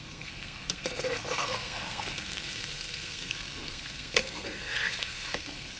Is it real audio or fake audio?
fake